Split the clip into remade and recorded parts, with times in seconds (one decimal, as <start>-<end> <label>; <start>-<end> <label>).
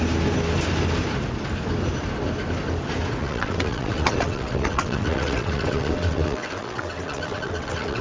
0.0-3.2 recorded; 3.2-8.0 remade